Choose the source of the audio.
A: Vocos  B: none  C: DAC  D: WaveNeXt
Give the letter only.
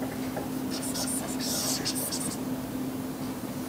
B